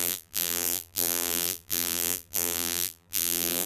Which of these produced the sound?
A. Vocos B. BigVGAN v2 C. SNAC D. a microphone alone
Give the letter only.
B